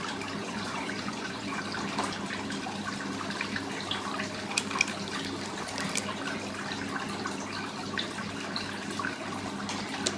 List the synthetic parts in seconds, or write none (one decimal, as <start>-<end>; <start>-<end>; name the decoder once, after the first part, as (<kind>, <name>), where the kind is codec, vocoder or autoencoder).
0.4-1.6 (vocoder, Vocos)